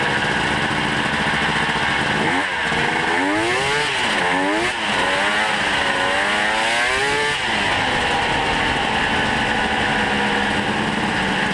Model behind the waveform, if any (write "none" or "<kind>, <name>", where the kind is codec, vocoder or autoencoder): none